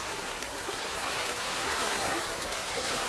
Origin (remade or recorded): remade